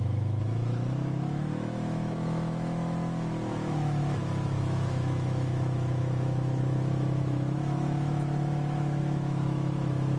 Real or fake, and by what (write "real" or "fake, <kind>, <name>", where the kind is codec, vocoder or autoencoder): fake, autoencoder, DAC-VAE